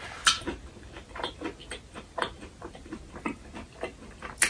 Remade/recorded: recorded